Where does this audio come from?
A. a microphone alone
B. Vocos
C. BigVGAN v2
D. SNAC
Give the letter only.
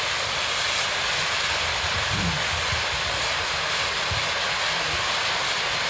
A